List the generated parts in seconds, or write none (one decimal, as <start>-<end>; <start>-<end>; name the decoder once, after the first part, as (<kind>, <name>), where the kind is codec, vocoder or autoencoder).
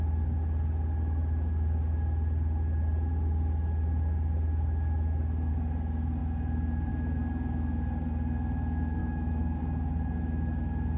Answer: 9.0-9.6 (autoencoder, DAC-VAE)